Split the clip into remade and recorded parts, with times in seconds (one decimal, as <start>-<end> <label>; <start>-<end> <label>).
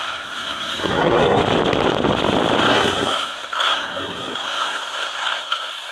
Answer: 0.0-1.4 remade; 1.4-2.7 recorded; 2.7-5.9 remade